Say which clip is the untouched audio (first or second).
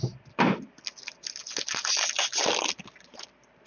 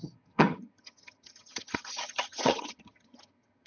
first